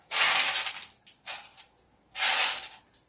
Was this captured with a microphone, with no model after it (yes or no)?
yes